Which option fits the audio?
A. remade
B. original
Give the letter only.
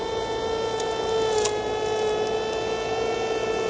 B